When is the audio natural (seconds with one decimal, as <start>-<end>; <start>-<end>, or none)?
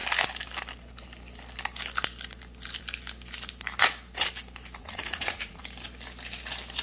0.0-4.8; 5.6-6.8